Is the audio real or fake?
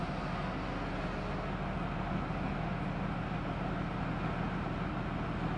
real